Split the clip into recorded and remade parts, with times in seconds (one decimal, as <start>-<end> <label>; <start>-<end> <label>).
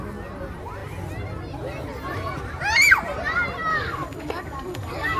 0.0-3.7 recorded; 3.7-5.2 remade